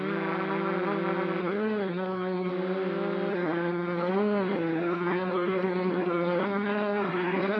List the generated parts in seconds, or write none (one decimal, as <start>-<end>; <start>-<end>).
1.4-2.5; 3.3-7.6